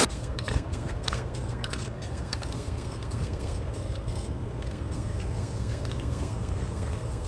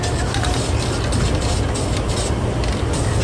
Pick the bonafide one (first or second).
second